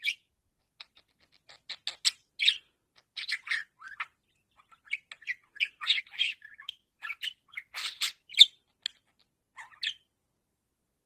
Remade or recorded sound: recorded